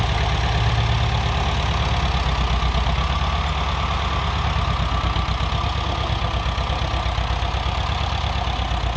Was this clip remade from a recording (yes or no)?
no